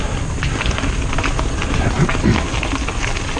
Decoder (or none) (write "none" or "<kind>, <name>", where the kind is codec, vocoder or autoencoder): none